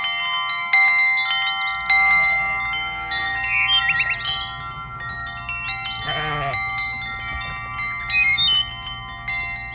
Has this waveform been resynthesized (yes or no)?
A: no